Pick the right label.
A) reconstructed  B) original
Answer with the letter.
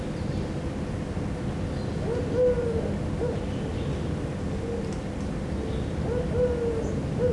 B